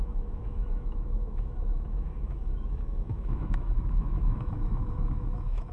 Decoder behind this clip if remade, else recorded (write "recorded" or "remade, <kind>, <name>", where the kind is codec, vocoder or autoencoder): remade, autoencoder, DAC-VAE